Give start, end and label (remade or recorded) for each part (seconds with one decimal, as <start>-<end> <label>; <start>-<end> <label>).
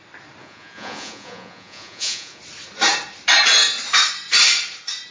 0.0-0.4 recorded; 0.4-2.4 remade; 2.4-5.1 recorded